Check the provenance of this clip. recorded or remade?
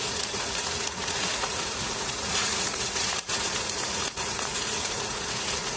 remade